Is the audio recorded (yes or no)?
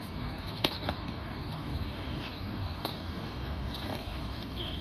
no